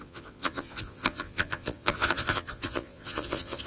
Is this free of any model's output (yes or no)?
no